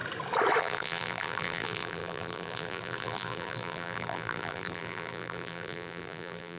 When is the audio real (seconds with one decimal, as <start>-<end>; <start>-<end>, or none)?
0.0-0.6